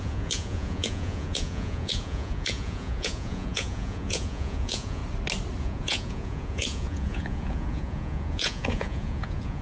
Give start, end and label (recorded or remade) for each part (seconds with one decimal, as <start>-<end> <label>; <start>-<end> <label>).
0.0-5.0 remade; 5.0-5.6 recorded; 5.6-9.6 remade